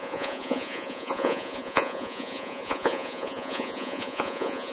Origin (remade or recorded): remade